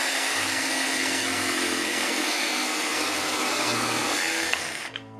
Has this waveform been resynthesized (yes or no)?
yes